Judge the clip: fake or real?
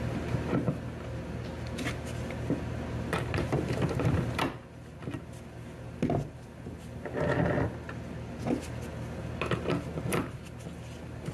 real